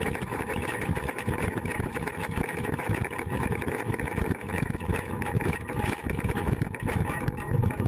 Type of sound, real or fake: fake